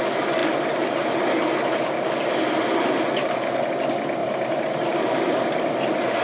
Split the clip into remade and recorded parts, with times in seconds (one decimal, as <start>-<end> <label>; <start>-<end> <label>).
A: 0.0-4.2 recorded; 4.2-5.3 remade; 5.3-6.2 recorded